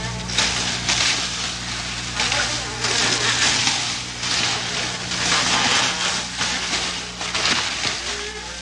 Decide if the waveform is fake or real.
real